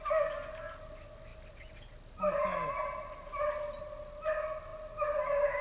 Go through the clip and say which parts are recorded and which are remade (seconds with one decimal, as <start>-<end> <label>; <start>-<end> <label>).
0.0-5.6 recorded